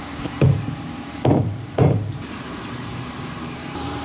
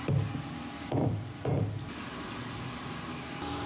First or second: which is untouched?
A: second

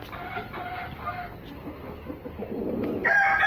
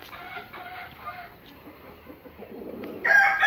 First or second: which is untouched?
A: first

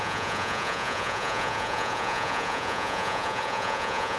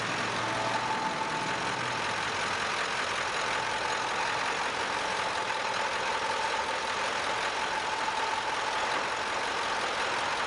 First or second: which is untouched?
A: second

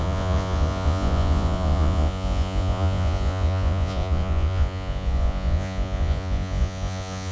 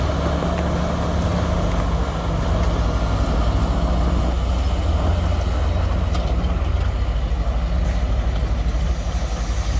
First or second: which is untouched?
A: second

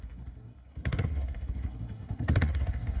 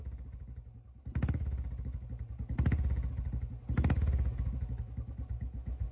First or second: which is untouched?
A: second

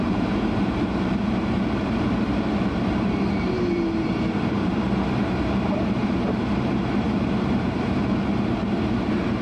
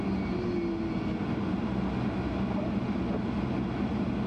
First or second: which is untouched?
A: second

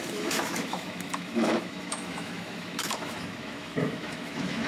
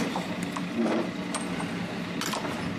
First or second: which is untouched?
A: second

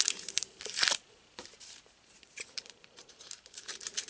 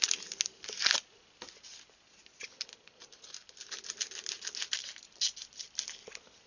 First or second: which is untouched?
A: second